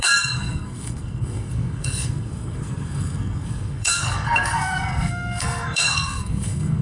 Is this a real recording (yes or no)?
no